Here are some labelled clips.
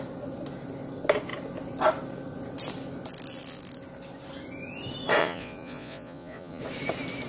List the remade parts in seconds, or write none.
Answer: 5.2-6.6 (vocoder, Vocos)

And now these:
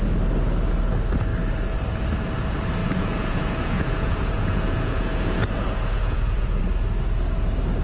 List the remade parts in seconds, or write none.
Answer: 2.8-6.6 (vocoder, Vocos)

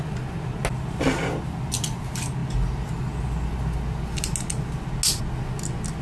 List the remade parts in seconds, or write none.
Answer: none